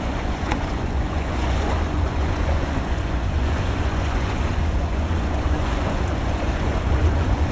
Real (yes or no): no